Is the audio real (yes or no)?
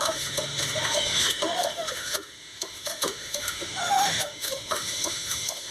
no